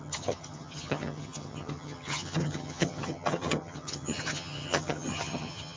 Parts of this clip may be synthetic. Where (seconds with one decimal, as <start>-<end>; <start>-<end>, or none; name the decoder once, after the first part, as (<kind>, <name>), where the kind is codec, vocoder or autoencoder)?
0.0-5.8 (vocoder, HiFi-GAN)